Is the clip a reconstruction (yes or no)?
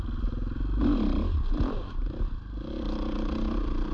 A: no